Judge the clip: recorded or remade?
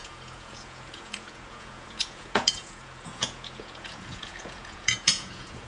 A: remade